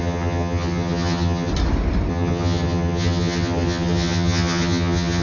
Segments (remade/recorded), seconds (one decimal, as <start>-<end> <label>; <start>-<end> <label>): 0.0-1.5 remade; 1.5-2.1 recorded; 2.1-5.2 remade